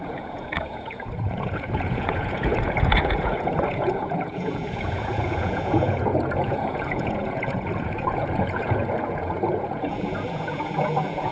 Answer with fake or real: fake